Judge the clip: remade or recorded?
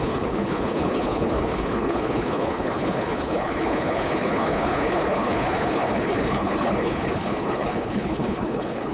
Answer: remade